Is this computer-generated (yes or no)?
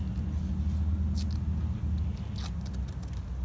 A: no